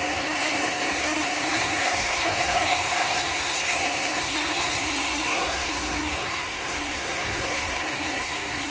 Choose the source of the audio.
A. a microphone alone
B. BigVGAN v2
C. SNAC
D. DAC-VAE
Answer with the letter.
C